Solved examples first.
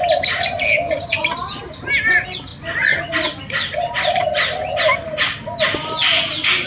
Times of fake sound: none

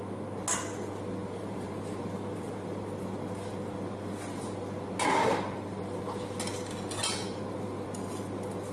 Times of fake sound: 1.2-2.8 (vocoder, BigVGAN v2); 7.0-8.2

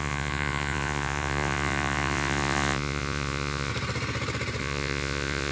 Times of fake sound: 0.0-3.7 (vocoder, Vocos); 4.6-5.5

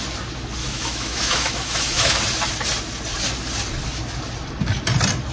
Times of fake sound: 0.6-2.2 (autoencoder, DAC-VAE)

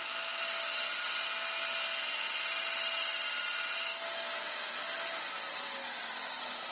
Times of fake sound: none

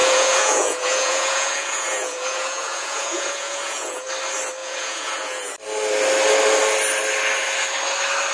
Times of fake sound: 0.0-4.1 (vocoder, Vocos); 4.6-5.5

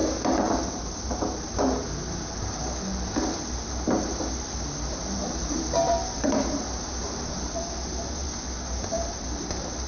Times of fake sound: 0.0-2.6 (vocoder, BigVGAN v2); 3.2-9.9